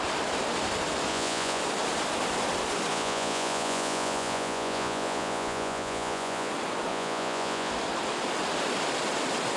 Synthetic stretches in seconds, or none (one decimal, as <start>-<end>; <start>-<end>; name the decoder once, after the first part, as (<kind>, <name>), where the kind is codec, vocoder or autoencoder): 1.1-1.6 (vocoder, Vocos); 2.9-6.5; 6.9-7.7